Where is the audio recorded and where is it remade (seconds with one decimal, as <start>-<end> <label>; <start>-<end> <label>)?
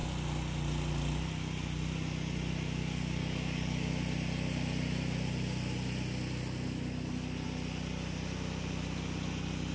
0.0-2.8 recorded; 2.8-3.9 remade; 3.9-9.7 recorded